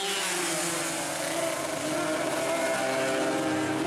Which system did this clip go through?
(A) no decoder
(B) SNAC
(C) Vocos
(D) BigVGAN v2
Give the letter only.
A